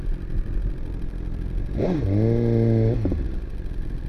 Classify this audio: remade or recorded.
recorded